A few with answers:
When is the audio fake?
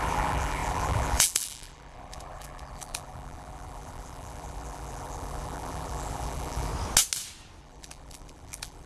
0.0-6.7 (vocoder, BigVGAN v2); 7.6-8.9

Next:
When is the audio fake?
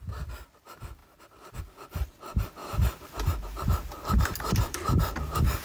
1.0-1.6 (vocoder, BigVGAN v2); 2.6-5.6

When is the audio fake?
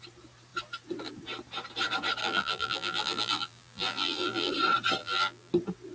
2.2-4.5 (vocoder, BigVGAN v2); 5.0-5.5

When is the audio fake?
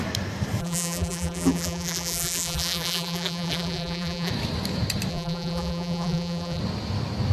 0.6-4.3 (vocoder, BigVGAN v2); 5.1-6.6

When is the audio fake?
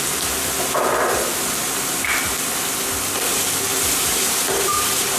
3.7-5.2 (vocoder, BigVGAN v2)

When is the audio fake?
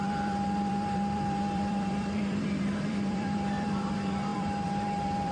0.0-5.3 (vocoder, BigVGAN v2)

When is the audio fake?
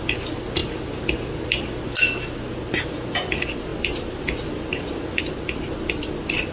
none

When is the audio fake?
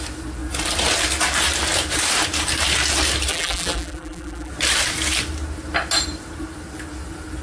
3.3-4.5 (vocoder, BigVGAN v2)